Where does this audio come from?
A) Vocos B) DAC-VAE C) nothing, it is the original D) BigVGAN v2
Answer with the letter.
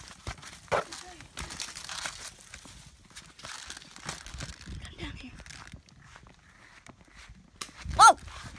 C